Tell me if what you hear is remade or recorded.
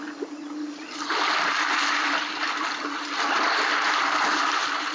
recorded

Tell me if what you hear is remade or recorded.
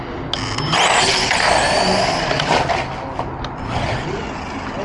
recorded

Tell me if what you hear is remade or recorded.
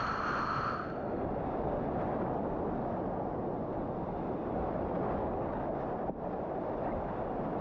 recorded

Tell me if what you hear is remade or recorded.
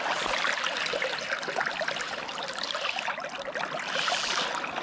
recorded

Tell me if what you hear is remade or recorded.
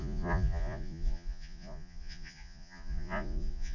remade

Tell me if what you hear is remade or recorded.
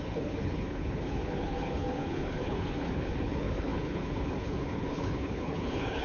remade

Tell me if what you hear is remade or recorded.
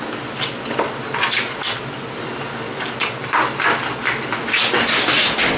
recorded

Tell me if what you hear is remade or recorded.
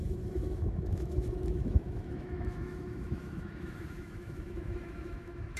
remade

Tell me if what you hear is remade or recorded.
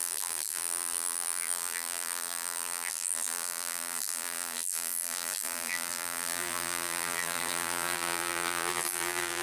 remade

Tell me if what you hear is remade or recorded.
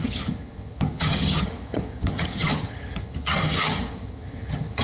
remade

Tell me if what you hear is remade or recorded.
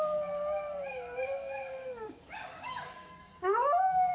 remade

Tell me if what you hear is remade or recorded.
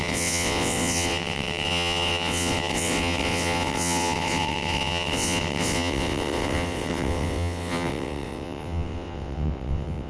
remade